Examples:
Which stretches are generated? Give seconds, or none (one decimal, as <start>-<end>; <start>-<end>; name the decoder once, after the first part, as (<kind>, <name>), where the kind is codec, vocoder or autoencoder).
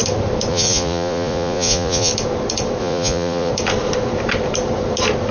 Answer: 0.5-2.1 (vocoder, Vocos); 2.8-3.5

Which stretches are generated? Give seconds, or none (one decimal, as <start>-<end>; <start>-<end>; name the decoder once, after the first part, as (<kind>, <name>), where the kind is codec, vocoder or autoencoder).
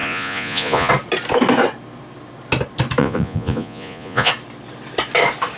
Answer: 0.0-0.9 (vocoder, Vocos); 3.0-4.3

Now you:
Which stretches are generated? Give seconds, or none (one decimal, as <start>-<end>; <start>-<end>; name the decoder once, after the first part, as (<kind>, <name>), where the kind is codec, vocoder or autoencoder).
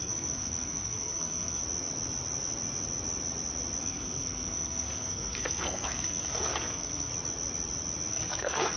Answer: 0.0-1.6 (codec, SNAC); 3.8-7.1; 8.1-8.8